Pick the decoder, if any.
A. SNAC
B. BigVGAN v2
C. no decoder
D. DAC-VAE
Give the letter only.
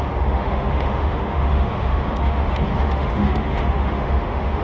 D